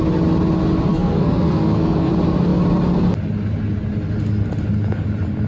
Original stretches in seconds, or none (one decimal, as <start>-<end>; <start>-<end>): 0.0-0.9; 2.1-5.5